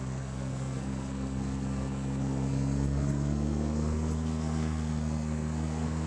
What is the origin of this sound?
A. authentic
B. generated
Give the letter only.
B